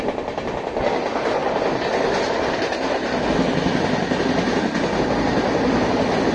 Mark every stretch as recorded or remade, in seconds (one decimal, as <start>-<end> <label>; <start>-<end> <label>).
0.0-6.3 recorded